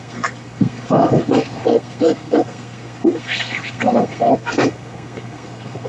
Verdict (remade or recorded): remade